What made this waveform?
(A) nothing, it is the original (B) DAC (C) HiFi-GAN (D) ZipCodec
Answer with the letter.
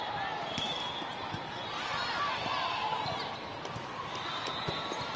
A